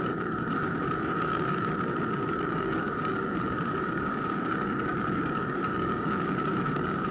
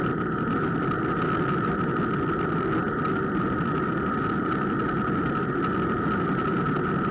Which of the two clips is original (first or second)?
second